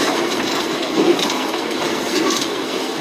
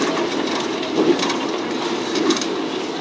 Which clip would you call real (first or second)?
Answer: second